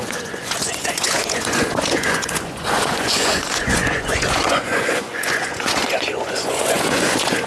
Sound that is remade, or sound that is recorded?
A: remade